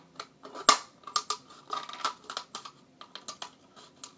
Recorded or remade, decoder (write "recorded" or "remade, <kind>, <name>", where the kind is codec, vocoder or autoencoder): recorded